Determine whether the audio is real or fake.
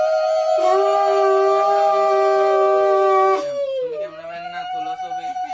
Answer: real